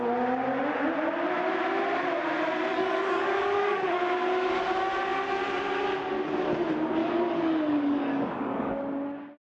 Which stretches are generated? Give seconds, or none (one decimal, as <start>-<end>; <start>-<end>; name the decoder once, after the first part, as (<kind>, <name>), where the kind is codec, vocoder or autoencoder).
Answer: 2.7-4.0 (codec, DAC); 7.0-8.8